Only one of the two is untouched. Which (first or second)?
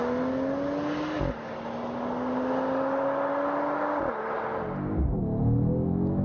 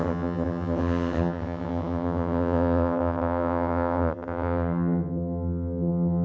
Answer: first